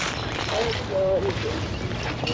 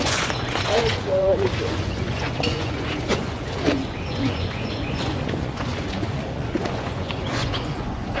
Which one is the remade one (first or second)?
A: second